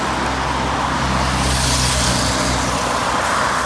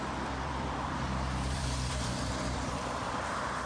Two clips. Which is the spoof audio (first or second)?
second